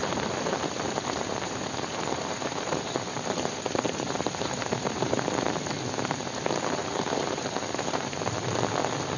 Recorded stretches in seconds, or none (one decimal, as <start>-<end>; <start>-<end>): 5.2-6.8; 8.2-9.2